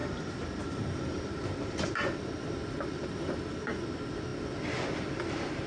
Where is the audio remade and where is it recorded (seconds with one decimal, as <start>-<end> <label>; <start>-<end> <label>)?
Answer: 0.0-3.4 remade; 3.4-4.3 recorded; 4.3-5.7 remade